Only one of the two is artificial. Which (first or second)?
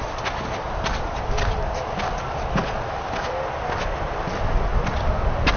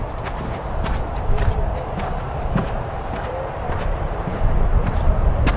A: second